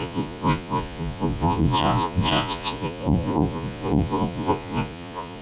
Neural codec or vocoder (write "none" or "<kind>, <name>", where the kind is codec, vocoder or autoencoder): vocoder, Vocos